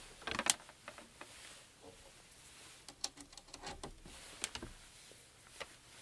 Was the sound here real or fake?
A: real